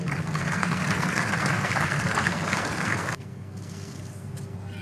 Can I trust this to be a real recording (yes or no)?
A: no